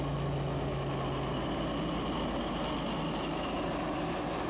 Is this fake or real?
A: real